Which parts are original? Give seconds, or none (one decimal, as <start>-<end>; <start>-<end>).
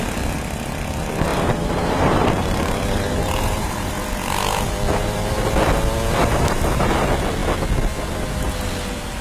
0.0-1.3; 3.9-6.2; 6.8-9.2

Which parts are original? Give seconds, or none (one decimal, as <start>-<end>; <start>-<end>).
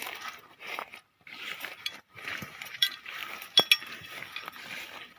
3.2-5.2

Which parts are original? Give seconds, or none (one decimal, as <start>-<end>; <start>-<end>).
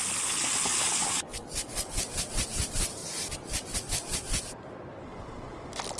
0.0-0.6; 2.0-6.0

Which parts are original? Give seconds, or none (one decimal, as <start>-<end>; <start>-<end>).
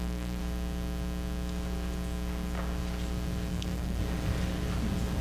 0.4-3.5; 4.0-5.2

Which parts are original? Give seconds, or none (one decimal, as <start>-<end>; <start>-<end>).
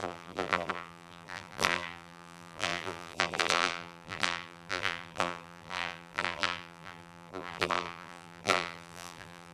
none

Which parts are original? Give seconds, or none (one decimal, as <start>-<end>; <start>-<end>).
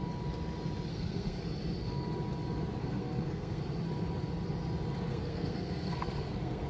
0.0-0.9; 1.4-2.8; 3.6-5.1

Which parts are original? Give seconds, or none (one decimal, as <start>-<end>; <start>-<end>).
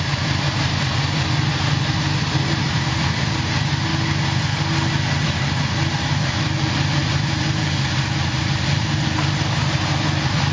0.7-2.3; 3.9-5.9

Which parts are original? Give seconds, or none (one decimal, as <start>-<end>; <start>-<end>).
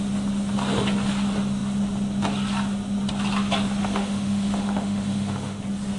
0.0-3.8; 5.6-6.0